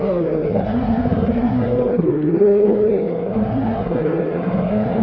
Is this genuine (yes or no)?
no